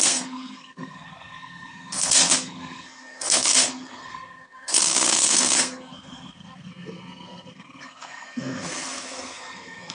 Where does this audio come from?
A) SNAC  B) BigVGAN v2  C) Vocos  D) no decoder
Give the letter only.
A